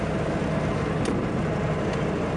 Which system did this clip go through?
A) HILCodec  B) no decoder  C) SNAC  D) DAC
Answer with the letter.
B